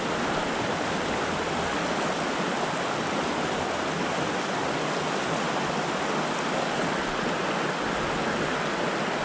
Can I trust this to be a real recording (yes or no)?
yes